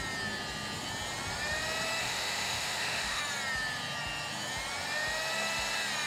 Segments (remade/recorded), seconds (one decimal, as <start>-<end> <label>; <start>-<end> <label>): 0.0-2.0 recorded; 2.0-3.2 remade; 3.2-6.1 recorded